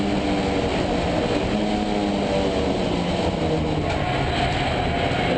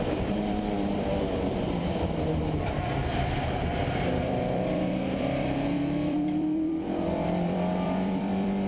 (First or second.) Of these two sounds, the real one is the first